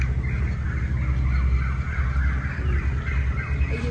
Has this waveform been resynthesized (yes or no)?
no